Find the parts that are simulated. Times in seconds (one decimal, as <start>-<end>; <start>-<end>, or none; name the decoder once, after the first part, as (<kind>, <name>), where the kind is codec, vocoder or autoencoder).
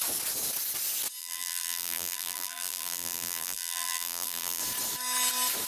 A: 1.2-4.6 (vocoder, BigVGAN v2)